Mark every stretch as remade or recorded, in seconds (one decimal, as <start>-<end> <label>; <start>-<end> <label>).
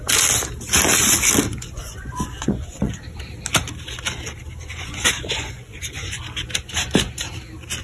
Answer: 0.0-1.5 recorded; 1.5-3.0 remade; 3.0-4.7 recorded; 4.7-6.2 remade; 6.2-7.8 recorded